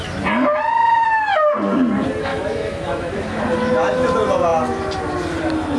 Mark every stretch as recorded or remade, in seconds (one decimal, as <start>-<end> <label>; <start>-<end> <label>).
0.0-2.3 recorded; 2.3-3.4 remade; 3.4-5.8 recorded